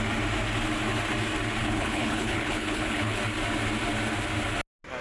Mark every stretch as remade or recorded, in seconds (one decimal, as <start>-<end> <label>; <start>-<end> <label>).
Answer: 0.0-1.6 recorded; 1.6-3.2 remade; 3.2-5.0 recorded